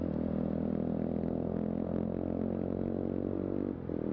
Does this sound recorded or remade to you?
recorded